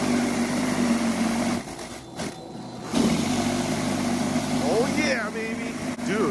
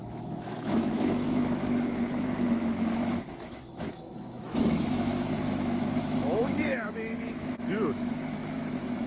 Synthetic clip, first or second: second